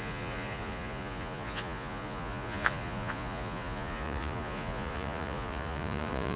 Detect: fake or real fake